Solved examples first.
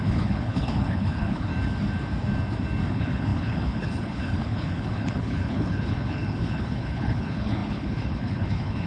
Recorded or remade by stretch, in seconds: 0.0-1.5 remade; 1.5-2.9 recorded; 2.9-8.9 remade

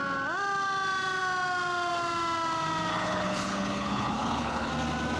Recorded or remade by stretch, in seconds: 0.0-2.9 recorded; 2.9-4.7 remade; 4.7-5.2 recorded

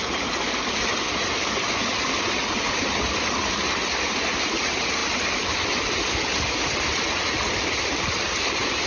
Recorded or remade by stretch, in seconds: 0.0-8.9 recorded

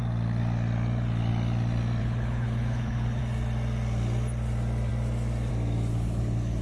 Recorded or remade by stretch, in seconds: 0.0-2.0 recorded; 2.0-3.2 remade; 3.2-5.9 recorded; 5.9-6.6 remade

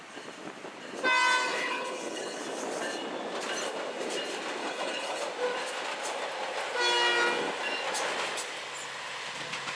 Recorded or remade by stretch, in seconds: 0.0-1.5 recorded; 1.5-2.4 remade; 2.4-4.6 recorded; 4.6-5.2 remade; 5.2-9.8 recorded

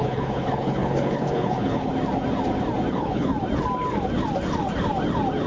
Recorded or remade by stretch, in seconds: 0.0-1.9 remade; 1.9-2.9 recorded; 2.9-3.3 remade; 3.3-5.5 recorded